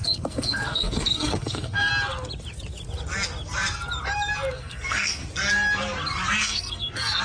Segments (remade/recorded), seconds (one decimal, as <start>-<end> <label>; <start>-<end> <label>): 0.0-1.9 remade; 1.9-4.5 recorded; 4.5-5.2 remade; 5.2-6.4 recorded; 6.4-7.2 remade